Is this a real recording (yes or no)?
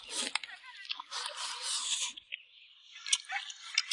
yes